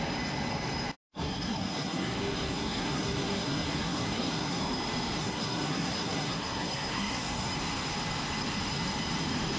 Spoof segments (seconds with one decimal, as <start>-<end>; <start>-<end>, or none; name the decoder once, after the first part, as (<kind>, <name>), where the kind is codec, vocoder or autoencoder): 1.1-4.6 (codec, SNAC); 5.2-7.5

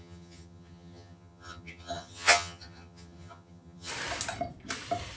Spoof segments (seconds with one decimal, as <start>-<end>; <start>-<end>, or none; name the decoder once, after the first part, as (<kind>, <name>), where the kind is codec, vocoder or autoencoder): 0.0-3.9 (vocoder, HiFi-GAN)

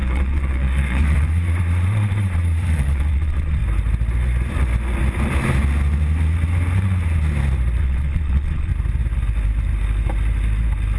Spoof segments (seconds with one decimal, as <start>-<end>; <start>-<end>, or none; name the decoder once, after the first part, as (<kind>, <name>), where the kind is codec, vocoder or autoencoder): 0.0-3.6 (vocoder, Vocos); 7.8-8.7

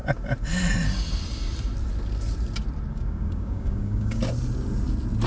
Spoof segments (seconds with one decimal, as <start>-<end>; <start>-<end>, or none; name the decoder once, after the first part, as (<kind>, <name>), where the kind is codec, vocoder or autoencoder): 2.9-4.2 (codec, DAC)